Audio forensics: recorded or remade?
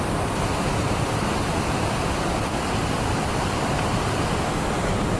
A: recorded